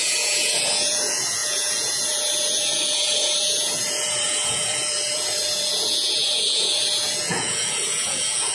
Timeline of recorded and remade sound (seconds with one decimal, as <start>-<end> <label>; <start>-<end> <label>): 0.0-8.5 remade